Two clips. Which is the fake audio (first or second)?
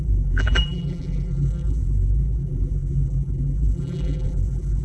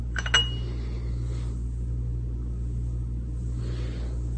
first